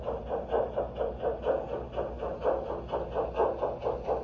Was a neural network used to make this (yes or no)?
no